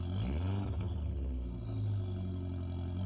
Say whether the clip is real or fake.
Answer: real